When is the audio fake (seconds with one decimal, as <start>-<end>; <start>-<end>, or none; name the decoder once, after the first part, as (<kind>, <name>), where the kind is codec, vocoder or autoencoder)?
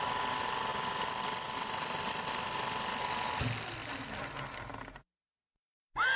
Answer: 0.7-2.3 (vocoder, BigVGAN v2)